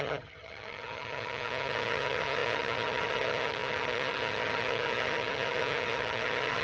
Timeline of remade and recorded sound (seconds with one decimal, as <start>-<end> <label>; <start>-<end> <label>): 0.0-6.6 remade